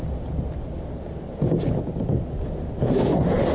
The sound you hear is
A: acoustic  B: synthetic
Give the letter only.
A